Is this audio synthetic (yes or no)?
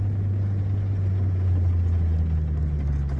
no